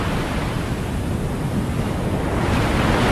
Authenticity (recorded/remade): recorded